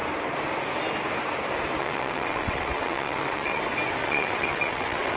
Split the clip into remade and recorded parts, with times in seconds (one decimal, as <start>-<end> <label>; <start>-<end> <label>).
0.0-1.8 recorded; 1.8-3.6 remade; 3.6-4.0 recorded; 4.0-5.2 remade